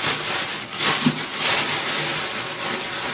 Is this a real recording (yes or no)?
yes